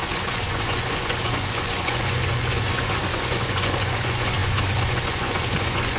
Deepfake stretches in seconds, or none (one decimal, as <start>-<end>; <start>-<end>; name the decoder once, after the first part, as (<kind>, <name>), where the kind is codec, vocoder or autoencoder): 0.0-6.0 (vocoder, Vocos)